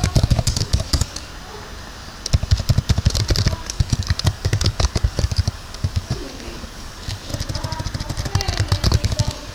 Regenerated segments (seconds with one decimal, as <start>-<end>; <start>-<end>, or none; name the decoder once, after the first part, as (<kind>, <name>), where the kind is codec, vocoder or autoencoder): 0.0-1.3 (codec, DAC); 3.7-7.3; 8.9-9.5